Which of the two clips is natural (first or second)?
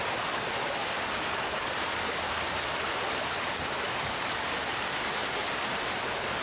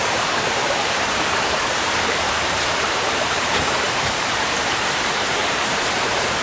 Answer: first